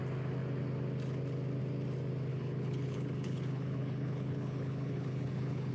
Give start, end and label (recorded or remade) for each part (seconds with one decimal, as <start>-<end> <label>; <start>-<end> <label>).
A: 0.0-2.3 recorded; 2.3-5.7 remade